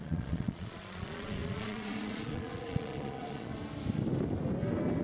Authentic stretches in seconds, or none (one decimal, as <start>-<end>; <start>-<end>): 3.5-5.0